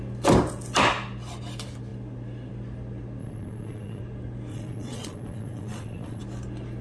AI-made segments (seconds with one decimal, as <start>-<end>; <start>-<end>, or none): 3.2-4.0; 4.5-6.2